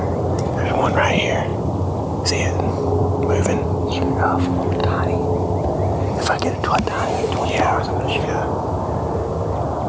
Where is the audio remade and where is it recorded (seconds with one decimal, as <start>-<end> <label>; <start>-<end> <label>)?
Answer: 0.0-9.9 recorded